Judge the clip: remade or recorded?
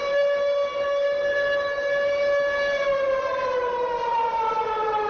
recorded